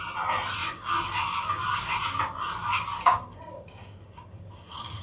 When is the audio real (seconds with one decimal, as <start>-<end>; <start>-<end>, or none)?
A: 0.0-0.6; 1.9-2.6